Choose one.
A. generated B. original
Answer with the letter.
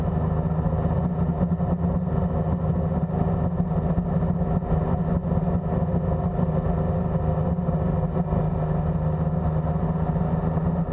B